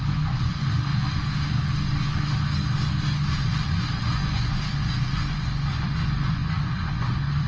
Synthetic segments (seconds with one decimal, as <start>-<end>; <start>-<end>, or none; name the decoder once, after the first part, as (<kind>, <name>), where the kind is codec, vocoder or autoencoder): 0.0-0.9 (vocoder, Vocos); 3.4-7.5